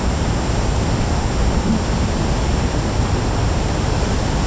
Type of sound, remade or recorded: recorded